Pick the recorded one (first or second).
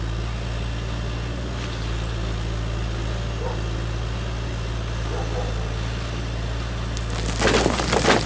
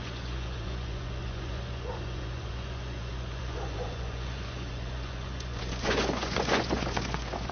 first